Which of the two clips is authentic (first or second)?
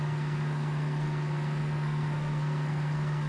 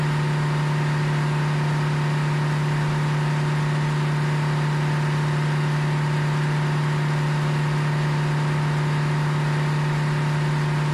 second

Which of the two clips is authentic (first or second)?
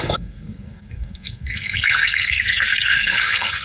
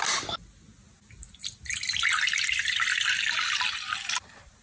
second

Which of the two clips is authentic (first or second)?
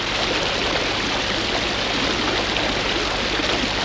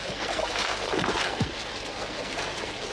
first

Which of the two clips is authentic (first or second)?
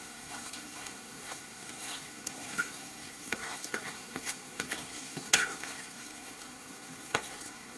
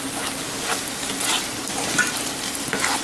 second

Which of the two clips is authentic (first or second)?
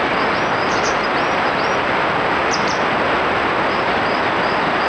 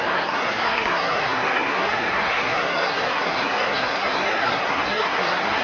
first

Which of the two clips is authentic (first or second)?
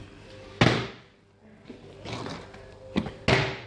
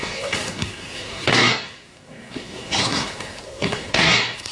first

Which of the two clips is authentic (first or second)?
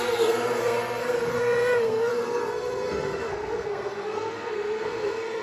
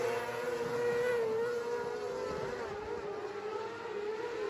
second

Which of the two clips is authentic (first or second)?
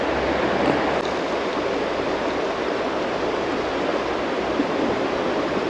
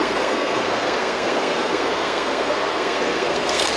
first